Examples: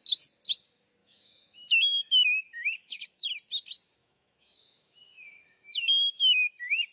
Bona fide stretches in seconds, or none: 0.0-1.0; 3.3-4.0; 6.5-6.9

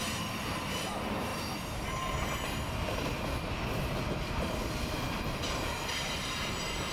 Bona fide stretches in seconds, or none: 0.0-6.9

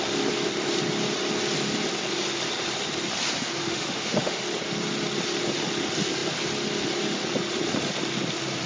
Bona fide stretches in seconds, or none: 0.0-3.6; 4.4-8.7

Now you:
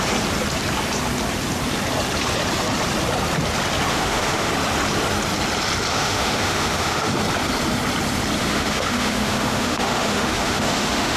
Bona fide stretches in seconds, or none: 0.0-3.9; 4.5-5.9; 7.1-8.4

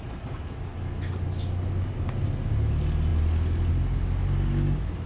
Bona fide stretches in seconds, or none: 0.0-5.1

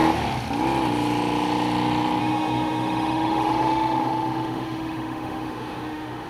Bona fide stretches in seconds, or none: 0.0-2.2

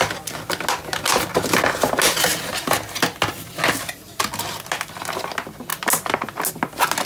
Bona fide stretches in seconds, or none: 0.0-7.1

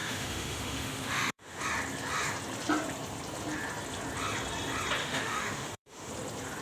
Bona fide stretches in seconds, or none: 1.6-5.0; 6.1-6.6